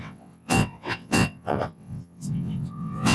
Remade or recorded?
remade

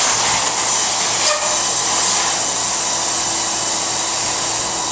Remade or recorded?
recorded